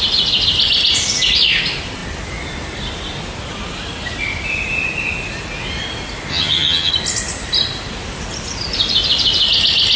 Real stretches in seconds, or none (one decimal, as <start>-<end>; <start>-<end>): 0.0-6.3; 6.9-10.0